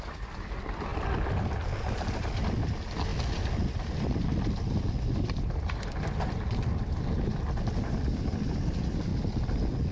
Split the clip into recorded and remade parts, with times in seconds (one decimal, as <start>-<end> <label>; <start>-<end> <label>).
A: 0.0-0.9 remade; 0.9-2.0 recorded; 2.0-9.1 remade; 9.1-9.9 recorded